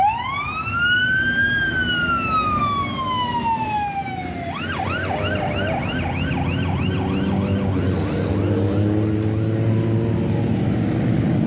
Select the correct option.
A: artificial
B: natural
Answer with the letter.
B